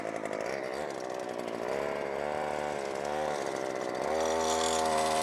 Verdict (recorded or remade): recorded